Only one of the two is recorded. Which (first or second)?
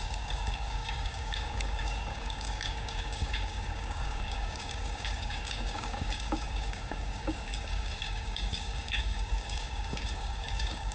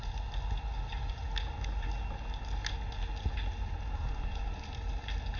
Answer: second